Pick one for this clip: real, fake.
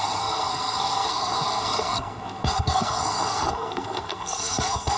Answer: fake